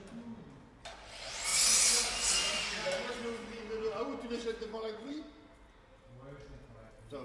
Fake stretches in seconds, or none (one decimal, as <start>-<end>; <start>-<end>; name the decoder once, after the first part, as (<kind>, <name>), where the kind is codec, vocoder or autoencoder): 4.7-5.2 (codec, HILCodec)